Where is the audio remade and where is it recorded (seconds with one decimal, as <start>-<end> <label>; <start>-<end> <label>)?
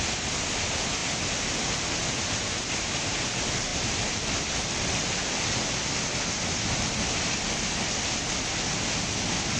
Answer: 0.0-9.6 recorded